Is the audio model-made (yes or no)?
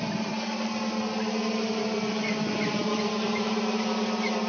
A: no